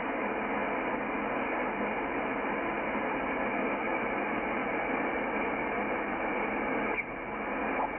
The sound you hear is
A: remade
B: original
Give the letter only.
B